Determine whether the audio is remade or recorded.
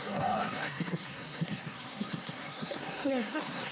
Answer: remade